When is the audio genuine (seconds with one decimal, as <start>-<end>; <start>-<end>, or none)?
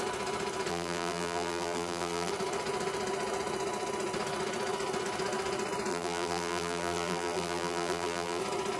0.0-0.7; 2.3-5.9; 8.4-8.8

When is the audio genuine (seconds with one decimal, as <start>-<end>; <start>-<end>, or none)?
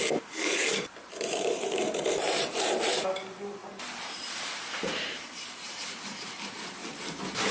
0.0-0.6; 2.9-3.6; 5.8-6.8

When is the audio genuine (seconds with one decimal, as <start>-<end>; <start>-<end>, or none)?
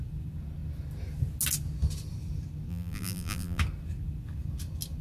0.0-2.7; 3.6-5.0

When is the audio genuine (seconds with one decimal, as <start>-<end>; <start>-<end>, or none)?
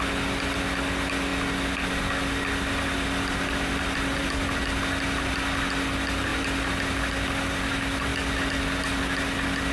1.3-2.9; 4.2-5.3; 6.3-6.9; 8.1-9.0